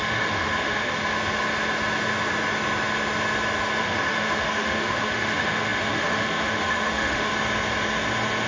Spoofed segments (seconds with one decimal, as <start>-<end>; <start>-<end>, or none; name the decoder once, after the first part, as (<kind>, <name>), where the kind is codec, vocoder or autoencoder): 0.0-1.0 (autoencoder, DAC-VAE); 3.8-7.3